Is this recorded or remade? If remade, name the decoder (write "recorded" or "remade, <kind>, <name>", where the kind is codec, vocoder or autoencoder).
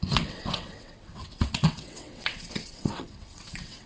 remade, vocoder, WaveNeXt